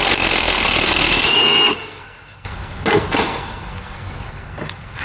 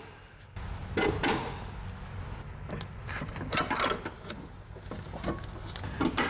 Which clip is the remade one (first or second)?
first